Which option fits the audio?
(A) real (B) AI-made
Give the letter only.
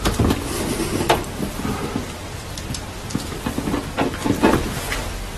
B